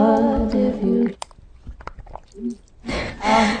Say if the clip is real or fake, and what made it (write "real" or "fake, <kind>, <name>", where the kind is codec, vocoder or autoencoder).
real